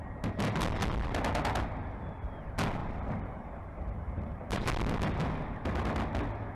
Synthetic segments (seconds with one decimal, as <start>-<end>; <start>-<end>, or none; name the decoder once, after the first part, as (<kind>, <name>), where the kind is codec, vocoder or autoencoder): 2.8-4.6 (vocoder, BigVGAN v2)